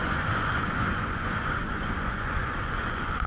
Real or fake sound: fake